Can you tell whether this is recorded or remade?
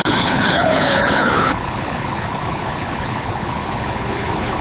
remade